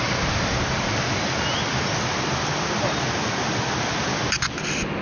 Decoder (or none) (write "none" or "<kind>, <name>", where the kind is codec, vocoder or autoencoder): none